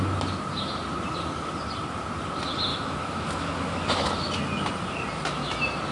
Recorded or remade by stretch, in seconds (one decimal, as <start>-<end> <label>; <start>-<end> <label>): 0.0-2.7 recorded; 2.7-4.3 remade; 4.3-5.9 recorded